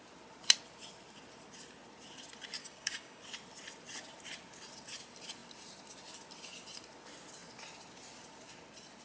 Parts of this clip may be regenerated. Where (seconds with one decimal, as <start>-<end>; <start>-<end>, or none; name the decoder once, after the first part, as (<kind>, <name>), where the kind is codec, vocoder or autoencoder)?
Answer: 2.6-3.2 (codec, DAC)